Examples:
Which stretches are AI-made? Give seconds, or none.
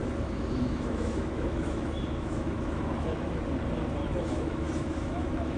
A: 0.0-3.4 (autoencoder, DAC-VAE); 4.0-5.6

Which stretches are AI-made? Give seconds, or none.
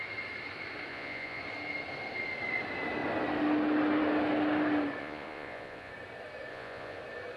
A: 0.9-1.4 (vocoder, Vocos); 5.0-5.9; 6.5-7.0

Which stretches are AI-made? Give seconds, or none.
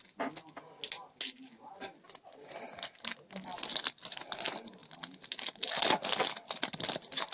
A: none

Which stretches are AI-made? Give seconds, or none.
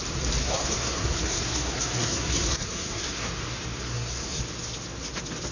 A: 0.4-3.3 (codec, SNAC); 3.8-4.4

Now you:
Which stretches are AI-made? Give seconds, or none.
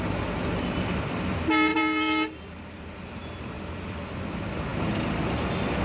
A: 0.0-4.7 (vocoder, BigVGAN v2)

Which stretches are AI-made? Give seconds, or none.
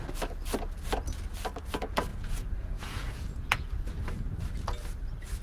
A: 2.1-3.8 (vocoder, Vocos)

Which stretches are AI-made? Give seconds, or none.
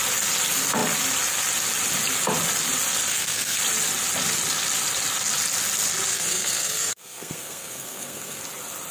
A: 3.1-3.6 (codec, SNAC); 6.1-8.4